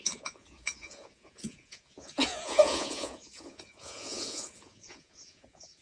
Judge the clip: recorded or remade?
remade